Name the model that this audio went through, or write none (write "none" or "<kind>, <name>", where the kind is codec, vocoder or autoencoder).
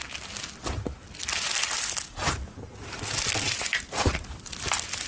none